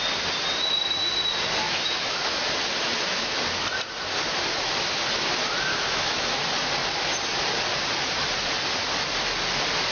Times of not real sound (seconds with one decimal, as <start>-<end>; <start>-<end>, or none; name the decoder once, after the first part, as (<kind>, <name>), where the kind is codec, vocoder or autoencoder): 1.6-2.4 (autoencoder, DAC-VAE); 5.7-6.3